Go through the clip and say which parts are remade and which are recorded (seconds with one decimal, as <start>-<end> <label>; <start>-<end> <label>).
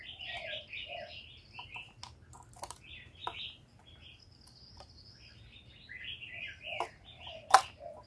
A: 0.0-3.2 recorded; 3.2-4.6 remade; 4.6-8.1 recorded